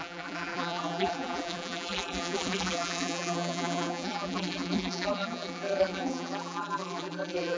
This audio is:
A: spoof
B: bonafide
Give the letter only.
A